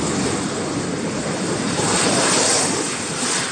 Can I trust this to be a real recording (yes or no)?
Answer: yes